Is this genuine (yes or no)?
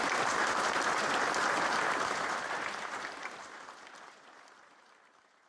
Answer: yes